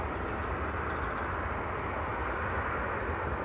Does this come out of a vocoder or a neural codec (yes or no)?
no